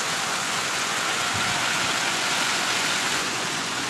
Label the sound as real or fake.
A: fake